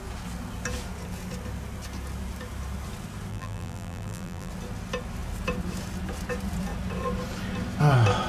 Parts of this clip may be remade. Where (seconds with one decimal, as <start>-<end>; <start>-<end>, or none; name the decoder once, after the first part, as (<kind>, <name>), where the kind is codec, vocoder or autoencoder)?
3.3-4.5 (vocoder, BigVGAN v2)